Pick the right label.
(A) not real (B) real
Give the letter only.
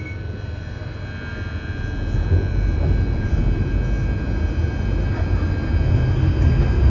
B